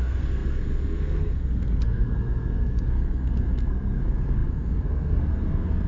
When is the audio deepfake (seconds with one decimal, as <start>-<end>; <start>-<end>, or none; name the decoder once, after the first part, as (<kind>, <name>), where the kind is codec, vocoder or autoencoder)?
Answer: 0.0-5.9 (codec, SNAC)